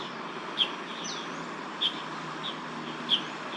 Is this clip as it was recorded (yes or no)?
yes